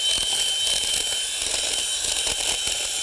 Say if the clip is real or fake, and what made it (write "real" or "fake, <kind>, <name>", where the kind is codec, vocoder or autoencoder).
real